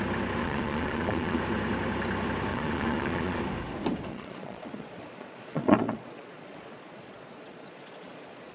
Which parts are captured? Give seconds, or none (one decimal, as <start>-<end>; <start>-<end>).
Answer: 0.0-0.4; 1.4-2.5; 3.4-4.1